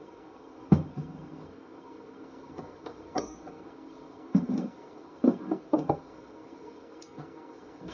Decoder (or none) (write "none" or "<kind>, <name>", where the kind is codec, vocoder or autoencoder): codec, SNAC